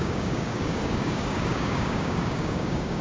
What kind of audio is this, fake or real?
fake